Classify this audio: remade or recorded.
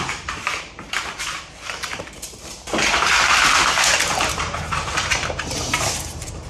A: remade